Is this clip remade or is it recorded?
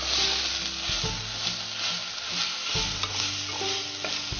recorded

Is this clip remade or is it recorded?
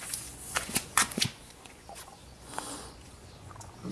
remade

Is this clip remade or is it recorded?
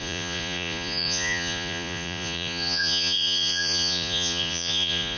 remade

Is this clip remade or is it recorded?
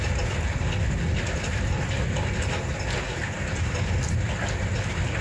recorded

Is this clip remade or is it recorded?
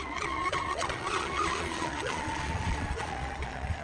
remade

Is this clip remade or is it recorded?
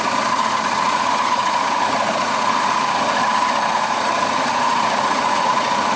remade